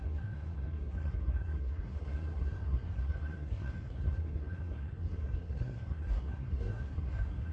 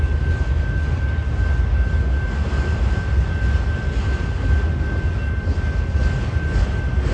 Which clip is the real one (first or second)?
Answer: second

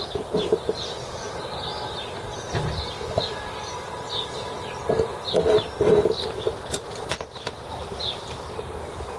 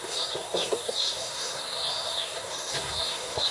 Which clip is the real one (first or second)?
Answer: first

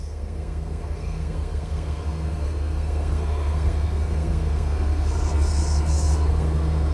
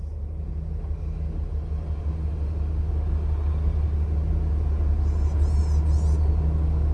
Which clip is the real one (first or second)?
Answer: second